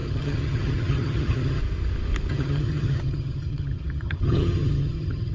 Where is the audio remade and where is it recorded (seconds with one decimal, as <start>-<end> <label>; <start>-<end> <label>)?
0.0-1.6 remade; 1.6-2.3 recorded; 2.3-5.3 remade